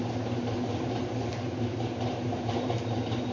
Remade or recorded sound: remade